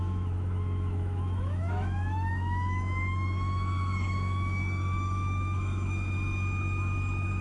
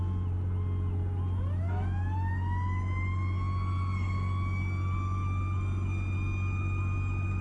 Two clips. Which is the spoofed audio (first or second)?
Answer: first